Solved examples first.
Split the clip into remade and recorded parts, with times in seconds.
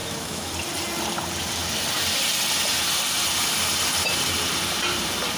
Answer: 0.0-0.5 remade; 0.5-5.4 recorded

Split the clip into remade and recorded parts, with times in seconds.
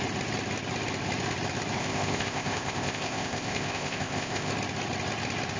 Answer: 0.0-1.8 recorded; 1.8-4.5 remade; 4.5-5.6 recorded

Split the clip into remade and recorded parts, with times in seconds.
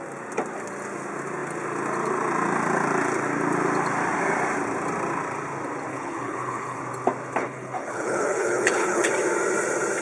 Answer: 0.0-5.9 recorded; 5.9-6.8 remade; 6.8-7.4 recorded; 7.4-9.1 remade; 9.1-10.0 recorded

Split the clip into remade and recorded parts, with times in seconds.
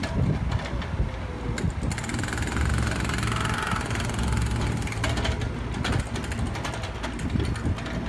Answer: 0.0-8.1 recorded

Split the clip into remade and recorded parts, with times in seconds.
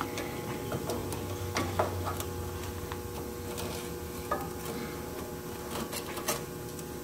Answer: 0.0-7.0 recorded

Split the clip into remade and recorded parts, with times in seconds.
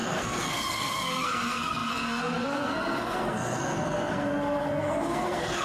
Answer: 0.0-5.6 remade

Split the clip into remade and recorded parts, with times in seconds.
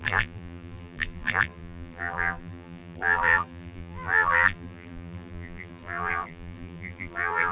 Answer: 0.0-7.5 remade